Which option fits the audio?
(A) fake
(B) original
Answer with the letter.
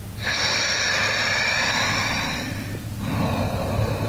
B